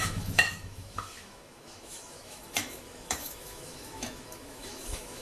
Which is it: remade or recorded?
remade